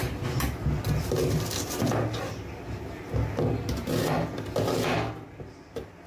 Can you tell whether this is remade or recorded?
recorded